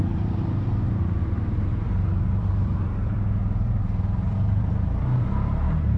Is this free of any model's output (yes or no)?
no